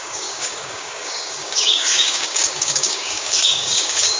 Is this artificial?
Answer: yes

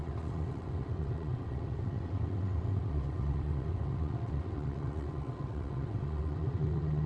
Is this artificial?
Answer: yes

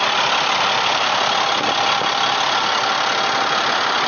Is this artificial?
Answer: no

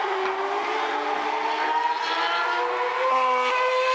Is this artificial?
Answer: no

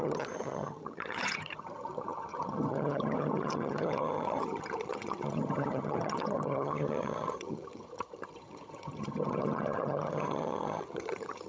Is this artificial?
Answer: yes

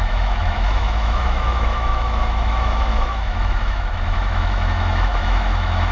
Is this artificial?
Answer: yes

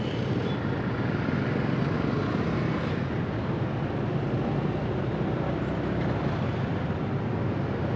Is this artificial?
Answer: no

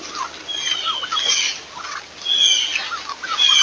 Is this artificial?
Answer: no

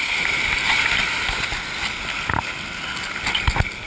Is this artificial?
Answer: no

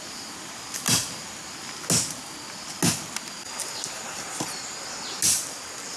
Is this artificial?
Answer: no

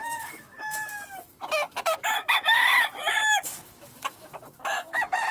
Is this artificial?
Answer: yes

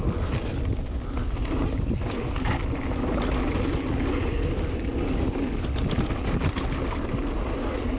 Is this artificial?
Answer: no